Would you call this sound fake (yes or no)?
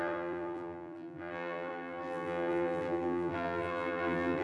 yes